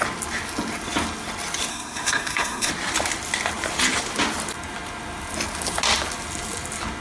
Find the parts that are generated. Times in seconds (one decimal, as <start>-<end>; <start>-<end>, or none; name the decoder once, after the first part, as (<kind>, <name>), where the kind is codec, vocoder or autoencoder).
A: 1.7-2.7 (codec, SNAC)